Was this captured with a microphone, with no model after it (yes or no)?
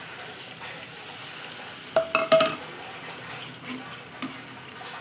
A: yes